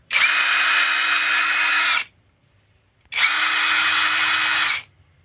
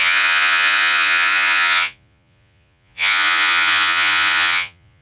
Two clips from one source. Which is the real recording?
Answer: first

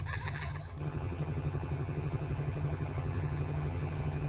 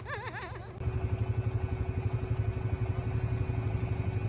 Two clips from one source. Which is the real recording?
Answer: second